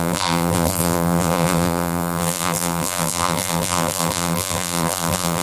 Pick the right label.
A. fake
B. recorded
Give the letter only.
A